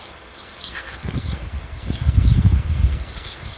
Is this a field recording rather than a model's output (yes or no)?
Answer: no